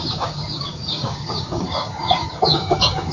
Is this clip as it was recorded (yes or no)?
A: no